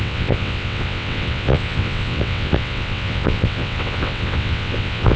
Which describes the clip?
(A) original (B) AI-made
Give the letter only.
B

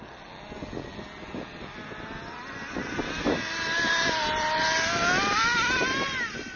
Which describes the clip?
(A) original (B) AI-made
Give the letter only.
A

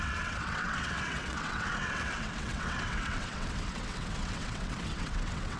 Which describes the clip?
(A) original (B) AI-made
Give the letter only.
B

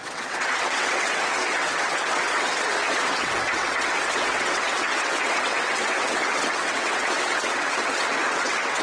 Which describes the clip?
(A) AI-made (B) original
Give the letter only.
A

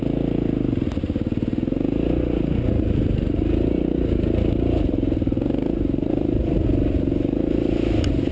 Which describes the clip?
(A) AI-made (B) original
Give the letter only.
B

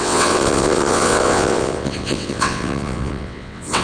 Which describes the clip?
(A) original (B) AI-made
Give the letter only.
B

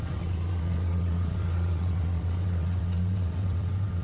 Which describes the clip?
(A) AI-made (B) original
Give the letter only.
A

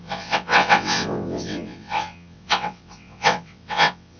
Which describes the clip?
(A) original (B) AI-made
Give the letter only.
B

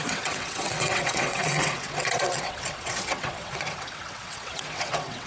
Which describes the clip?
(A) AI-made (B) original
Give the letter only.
A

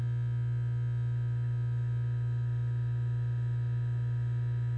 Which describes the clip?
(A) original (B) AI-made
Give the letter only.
A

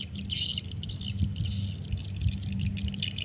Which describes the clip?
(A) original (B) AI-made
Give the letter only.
A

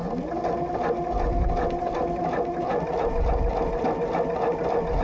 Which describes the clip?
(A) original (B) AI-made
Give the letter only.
A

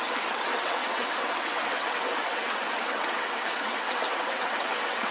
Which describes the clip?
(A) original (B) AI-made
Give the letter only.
B